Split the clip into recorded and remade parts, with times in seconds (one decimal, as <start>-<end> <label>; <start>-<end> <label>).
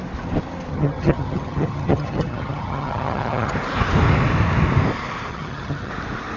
0.0-0.7 recorded; 0.7-3.5 remade; 3.5-5.3 recorded; 5.3-5.9 remade; 5.9-6.4 recorded